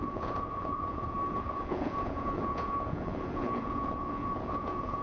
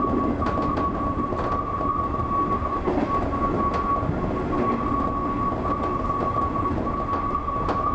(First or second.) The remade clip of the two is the first